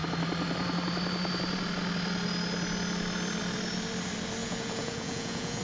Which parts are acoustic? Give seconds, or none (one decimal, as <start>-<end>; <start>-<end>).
0.0-4.4